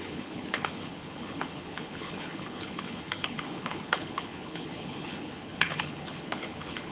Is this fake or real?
fake